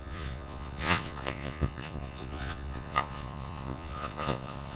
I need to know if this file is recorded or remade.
remade